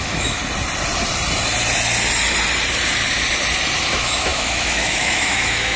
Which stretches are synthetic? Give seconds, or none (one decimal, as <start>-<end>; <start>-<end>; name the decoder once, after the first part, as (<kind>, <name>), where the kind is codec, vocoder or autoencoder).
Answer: 0.0-0.4 (autoencoder, DAC-VAE); 3.9-5.8